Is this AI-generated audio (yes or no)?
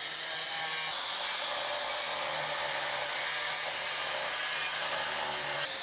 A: no